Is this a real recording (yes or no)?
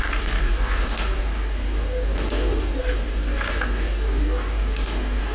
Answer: no